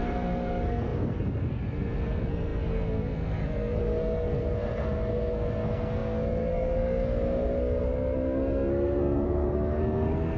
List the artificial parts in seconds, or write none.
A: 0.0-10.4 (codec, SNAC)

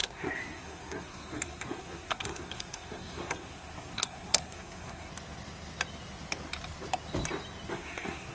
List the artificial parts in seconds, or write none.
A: 0.0-5.1 (codec, SNAC); 7.7-8.3

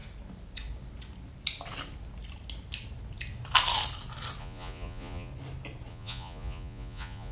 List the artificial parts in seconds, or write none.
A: 4.4-5.3 (vocoder, Vocos); 5.9-7.3

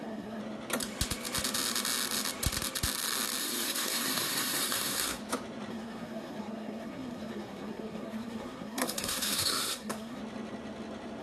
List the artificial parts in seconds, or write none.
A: 0.0-0.4 (codec, SNAC); 3.4-5.2; 5.7-10.2

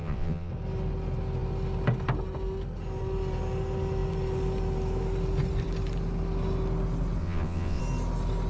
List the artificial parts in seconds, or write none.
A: 0.0-0.5 (vocoder, WaveNeXt); 7.2-7.8

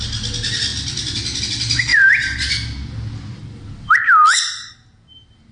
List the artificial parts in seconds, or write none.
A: 1.9-2.5 (vocoder, BigVGAN v2)